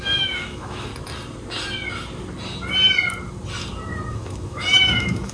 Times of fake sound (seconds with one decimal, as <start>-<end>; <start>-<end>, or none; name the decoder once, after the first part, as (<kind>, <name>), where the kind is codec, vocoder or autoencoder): 0.0-0.9 (autoencoder, DAC-VAE); 4.1-5.3